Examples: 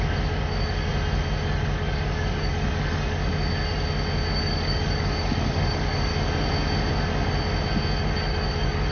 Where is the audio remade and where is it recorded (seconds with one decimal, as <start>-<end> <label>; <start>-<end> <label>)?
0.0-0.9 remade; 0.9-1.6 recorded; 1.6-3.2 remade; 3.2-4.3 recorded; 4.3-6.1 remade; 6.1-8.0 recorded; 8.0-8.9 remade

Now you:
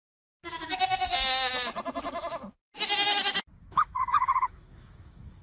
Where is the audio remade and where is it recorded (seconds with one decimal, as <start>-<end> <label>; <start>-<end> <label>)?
0.0-3.6 recorded; 3.6-5.4 remade

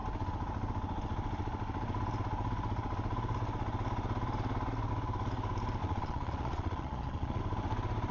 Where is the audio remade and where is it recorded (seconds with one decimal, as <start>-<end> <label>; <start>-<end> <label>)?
0.0-5.8 recorded; 5.8-7.4 remade; 7.4-8.1 recorded

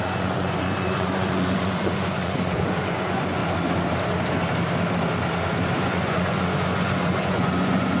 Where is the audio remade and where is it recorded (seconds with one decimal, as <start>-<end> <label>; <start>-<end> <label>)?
0.0-3.4 remade; 3.4-5.8 recorded; 5.8-8.0 remade

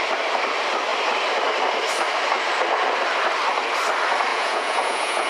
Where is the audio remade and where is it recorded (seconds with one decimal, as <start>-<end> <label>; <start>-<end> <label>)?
0.0-4.3 recorded; 4.3-5.3 remade

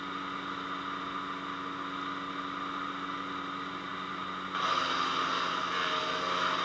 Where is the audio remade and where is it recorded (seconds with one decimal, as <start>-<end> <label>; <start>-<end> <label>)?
0.0-6.6 recorded

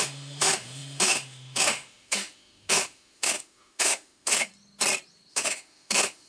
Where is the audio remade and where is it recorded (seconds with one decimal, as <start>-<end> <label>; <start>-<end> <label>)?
0.0-4.5 remade; 4.5-5.3 recorded; 5.3-6.3 remade